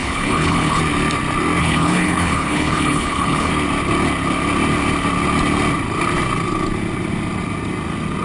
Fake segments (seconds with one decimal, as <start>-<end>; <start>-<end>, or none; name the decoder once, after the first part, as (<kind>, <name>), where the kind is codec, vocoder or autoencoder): 0.0-0.8 (codec, HILCodec); 1.6-3.5